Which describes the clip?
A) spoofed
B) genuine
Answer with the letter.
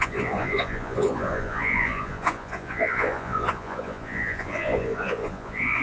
A